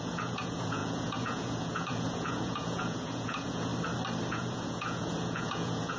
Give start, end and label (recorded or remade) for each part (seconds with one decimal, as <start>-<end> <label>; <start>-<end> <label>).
0.0-3.7 remade; 3.7-4.3 recorded; 4.3-6.0 remade